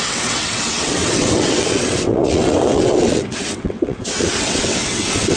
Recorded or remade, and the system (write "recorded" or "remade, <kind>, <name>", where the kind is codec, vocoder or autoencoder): remade, vocoder, WaveNeXt